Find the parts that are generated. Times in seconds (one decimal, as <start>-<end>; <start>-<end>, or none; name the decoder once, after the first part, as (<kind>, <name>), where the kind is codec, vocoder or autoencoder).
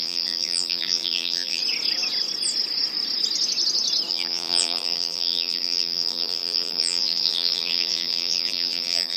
0.0-1.6 (vocoder, BigVGAN v2); 4.1-9.2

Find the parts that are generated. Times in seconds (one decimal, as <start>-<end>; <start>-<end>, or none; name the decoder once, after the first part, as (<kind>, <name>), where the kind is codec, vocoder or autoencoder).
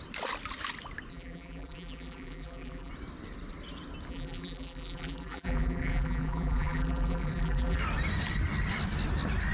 1.1-2.9 (vocoder, BigVGAN v2); 4.1-7.8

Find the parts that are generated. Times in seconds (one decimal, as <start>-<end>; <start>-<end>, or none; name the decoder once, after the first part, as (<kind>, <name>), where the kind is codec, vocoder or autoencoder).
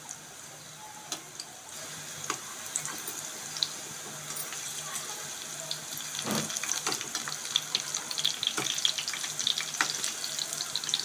none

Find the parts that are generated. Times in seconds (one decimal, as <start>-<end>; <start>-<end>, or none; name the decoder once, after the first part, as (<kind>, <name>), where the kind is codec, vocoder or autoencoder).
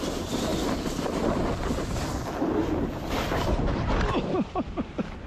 none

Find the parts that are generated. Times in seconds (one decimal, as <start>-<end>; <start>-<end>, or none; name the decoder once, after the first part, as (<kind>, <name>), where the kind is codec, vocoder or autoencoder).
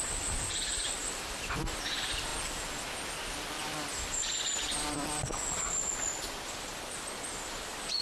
0.0-2.3 (vocoder, BigVGAN v2); 5.9-8.0